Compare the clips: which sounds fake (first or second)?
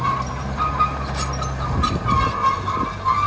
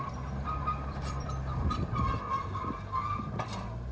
second